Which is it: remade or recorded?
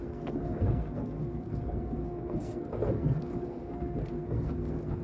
remade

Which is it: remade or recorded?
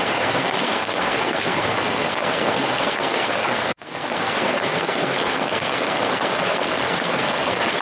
remade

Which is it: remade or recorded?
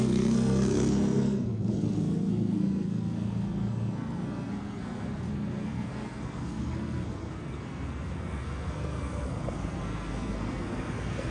remade